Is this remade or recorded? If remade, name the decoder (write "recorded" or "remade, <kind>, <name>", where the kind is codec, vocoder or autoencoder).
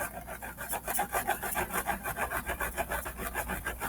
recorded